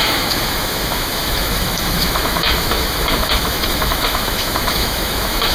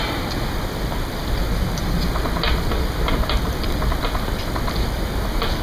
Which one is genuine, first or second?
second